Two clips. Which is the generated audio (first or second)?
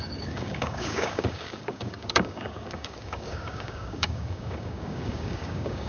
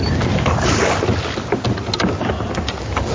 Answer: first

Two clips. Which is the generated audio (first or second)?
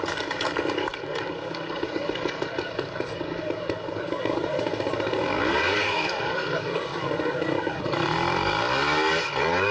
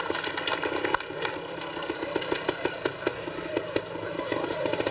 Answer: first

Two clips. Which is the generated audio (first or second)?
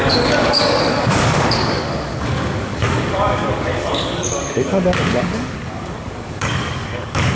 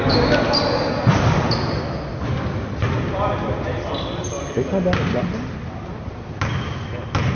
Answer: first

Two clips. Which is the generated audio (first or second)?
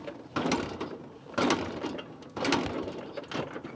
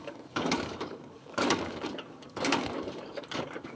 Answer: second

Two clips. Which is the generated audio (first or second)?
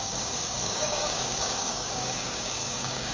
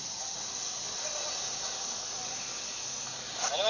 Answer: first